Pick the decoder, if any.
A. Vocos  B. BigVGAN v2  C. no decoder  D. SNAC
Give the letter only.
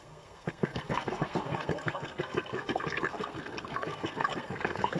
D